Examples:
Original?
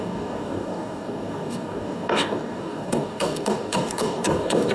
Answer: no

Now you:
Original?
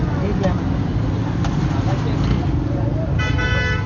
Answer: yes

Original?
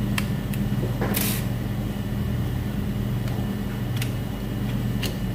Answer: no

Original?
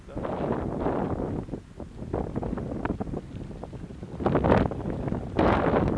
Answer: yes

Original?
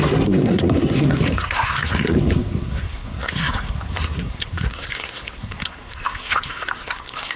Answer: no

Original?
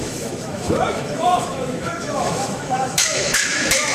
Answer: no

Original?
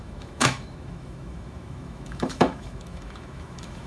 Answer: no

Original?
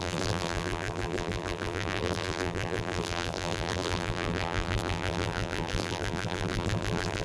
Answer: no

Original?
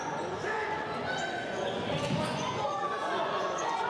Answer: no